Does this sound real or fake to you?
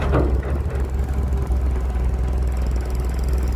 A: real